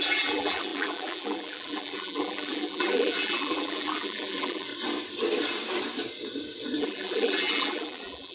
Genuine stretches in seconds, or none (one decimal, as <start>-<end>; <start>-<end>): 4.7-6.8